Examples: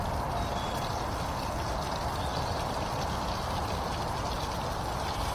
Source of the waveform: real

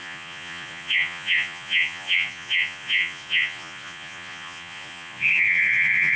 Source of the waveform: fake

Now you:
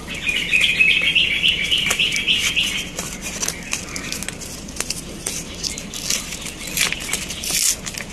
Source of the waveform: real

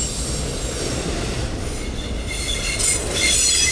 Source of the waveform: real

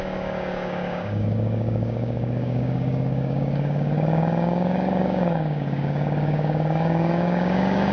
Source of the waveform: fake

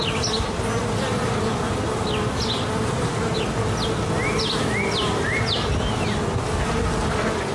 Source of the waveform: real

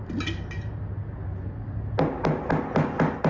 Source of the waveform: real